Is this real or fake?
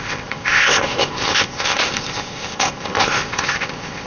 fake